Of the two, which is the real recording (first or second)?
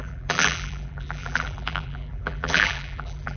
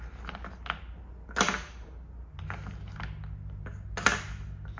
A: second